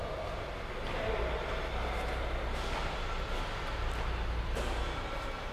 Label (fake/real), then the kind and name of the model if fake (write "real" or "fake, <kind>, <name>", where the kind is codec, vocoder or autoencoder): real